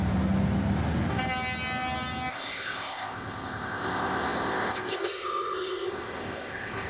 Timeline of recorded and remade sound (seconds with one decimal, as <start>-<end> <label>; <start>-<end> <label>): 0.0-2.3 recorded; 2.3-6.9 remade